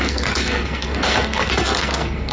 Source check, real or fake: fake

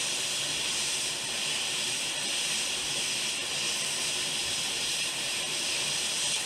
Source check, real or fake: fake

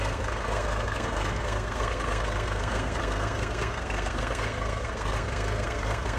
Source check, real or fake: fake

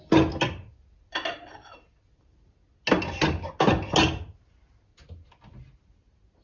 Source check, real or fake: real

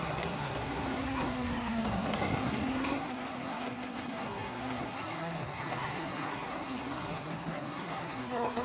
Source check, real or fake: fake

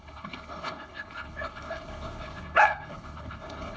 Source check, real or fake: fake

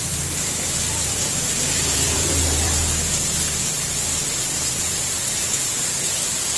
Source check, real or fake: fake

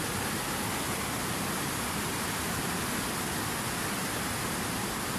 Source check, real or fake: real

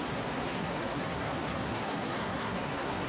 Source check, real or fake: fake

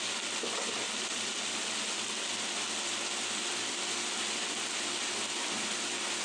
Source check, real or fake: real